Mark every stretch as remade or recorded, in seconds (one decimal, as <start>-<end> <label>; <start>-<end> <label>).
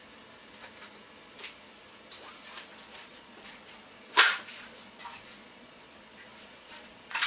0.0-2.7 recorded; 2.7-7.3 remade